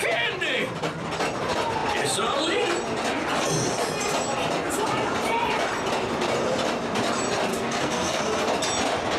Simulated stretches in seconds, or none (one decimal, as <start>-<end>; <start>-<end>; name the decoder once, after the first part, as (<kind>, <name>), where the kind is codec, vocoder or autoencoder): 7.5-8.2 (codec, SNAC)